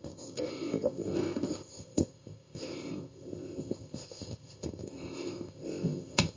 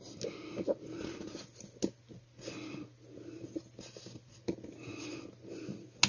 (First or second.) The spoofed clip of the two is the first